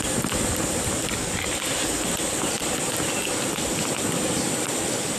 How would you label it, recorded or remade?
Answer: recorded